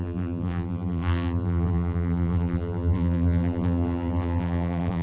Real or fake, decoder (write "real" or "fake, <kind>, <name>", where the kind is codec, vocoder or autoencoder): fake, vocoder, BigVGAN v2